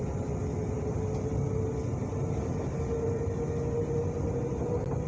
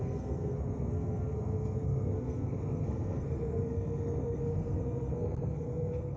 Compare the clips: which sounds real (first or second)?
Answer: first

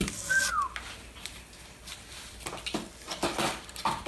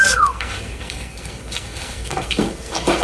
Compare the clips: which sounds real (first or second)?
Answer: first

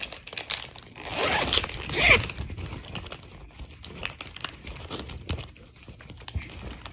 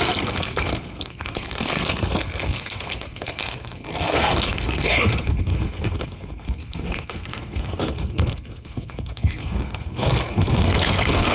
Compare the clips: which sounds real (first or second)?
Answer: first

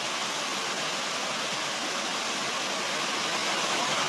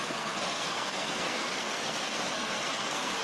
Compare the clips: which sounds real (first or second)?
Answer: first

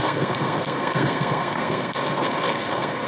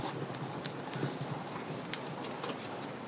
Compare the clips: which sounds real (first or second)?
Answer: second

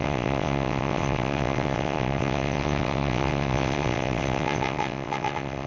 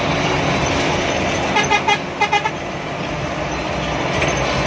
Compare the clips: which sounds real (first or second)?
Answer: second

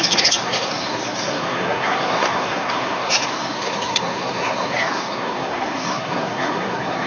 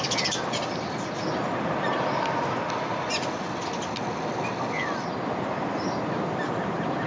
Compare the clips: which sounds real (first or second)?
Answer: second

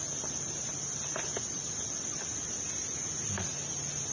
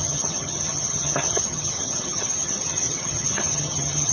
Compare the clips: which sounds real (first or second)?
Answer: first